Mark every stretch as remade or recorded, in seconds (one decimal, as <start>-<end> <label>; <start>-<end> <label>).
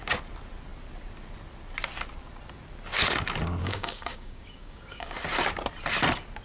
0.0-3.6 recorded; 3.6-5.1 remade; 5.1-6.4 recorded